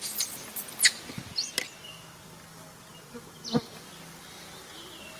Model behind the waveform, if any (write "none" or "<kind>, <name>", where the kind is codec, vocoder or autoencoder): none